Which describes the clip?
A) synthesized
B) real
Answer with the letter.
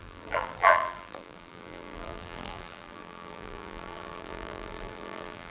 A